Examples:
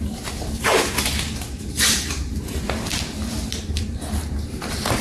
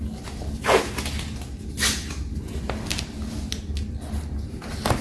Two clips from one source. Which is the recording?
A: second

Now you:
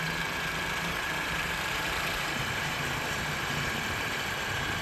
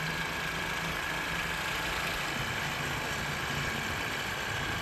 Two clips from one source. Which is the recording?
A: second